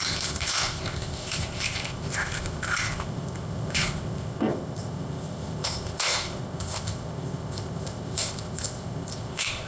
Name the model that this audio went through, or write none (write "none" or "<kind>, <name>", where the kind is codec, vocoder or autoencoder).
codec, ZipCodec